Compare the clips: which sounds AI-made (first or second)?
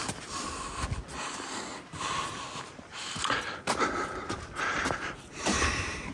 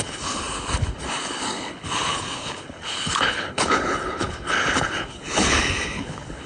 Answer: second